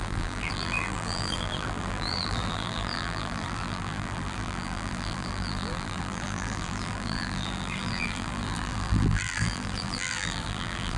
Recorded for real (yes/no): no